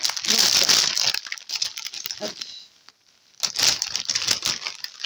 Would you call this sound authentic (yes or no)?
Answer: yes